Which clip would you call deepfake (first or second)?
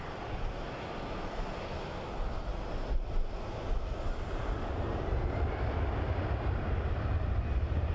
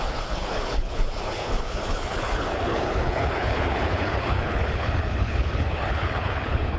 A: second